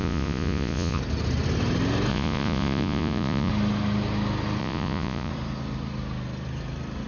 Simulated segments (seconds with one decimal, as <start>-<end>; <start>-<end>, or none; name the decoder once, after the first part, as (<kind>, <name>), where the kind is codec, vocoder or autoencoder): 0.0-1.0 (vocoder, Vocos); 2.1-3.5; 4.6-5.3